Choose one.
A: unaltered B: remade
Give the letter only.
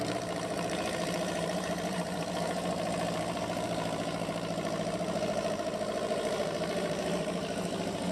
B